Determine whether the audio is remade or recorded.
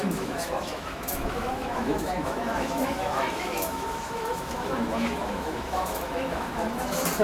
remade